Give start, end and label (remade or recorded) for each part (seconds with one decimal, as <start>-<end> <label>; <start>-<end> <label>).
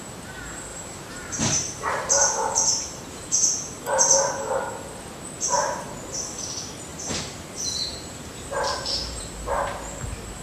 0.0-0.7 recorded; 0.7-3.8 remade; 3.8-6.9 recorded; 6.9-9.6 remade; 9.6-10.4 recorded